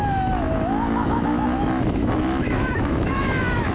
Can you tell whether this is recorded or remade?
remade